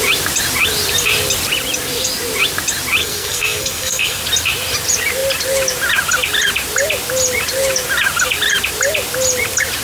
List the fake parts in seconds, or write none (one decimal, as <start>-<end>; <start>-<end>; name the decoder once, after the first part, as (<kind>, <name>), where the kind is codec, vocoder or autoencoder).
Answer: 3.0-4.2 (codec, SNAC)